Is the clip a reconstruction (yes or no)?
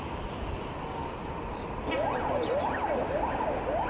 no